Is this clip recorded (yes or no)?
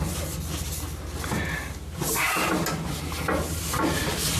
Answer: yes